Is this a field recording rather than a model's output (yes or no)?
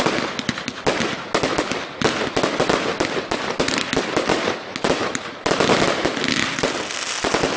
yes